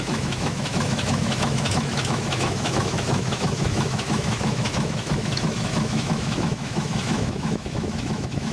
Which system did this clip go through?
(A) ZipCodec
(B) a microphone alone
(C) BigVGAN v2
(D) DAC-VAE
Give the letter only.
D